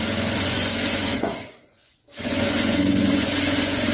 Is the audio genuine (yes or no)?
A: no